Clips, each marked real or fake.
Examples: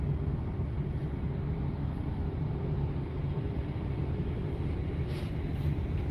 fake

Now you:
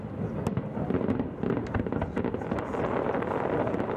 real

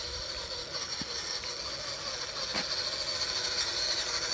real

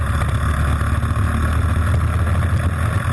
real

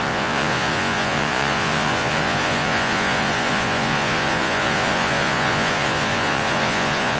fake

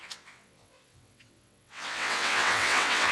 fake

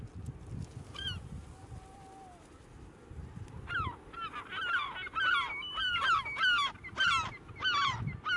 real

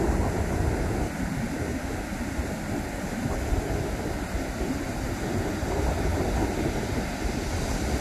real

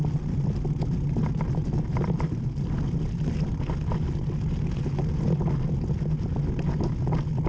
real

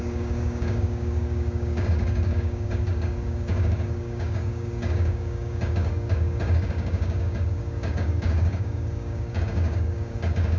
fake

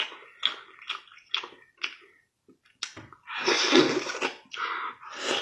real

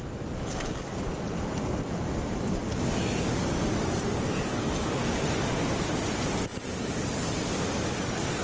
real